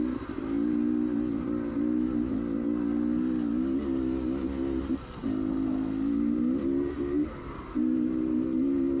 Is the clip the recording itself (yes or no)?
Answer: yes